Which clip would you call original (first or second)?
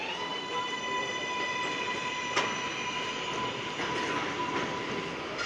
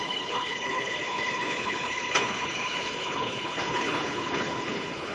first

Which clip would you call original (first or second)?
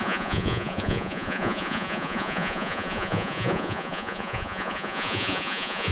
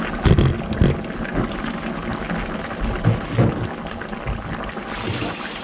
second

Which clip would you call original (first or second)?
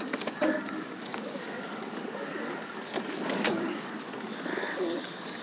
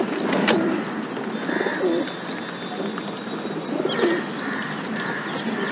second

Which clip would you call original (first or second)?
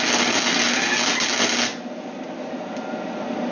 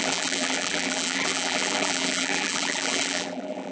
first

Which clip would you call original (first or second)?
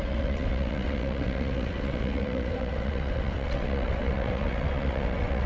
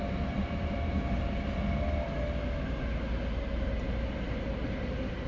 second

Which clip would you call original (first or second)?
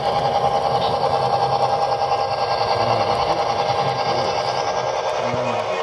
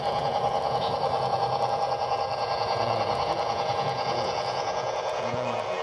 first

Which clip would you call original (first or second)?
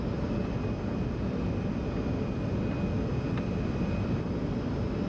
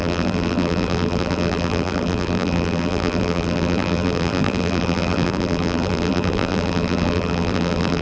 first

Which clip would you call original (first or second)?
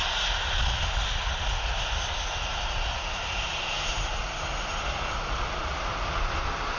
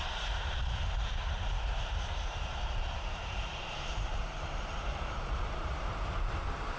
first